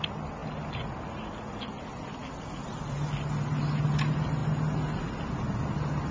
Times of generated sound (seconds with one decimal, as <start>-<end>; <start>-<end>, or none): none